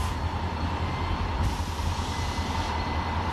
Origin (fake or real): real